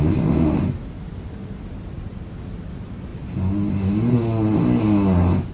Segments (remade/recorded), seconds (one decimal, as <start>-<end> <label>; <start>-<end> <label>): 0.0-5.5 recorded